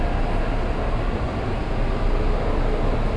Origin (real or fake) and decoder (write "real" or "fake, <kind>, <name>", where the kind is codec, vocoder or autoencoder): real